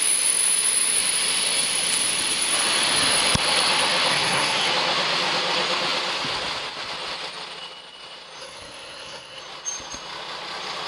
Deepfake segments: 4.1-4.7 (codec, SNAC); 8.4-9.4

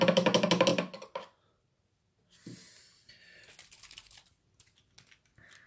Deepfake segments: none

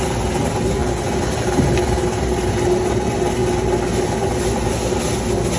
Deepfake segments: 0.8-2.6 (vocoder, BigVGAN v2)

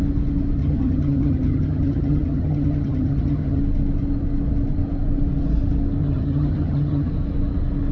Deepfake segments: 0.6-3.6 (vocoder, HiFi-GAN); 6.0-7.1

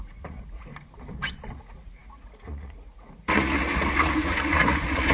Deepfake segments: 0.0-0.7 (vocoder, Vocos); 1.6-5.1